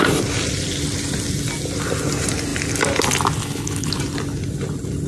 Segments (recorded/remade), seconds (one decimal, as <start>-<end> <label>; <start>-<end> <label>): 0.0-3.4 recorded; 3.4-3.9 remade; 3.9-5.1 recorded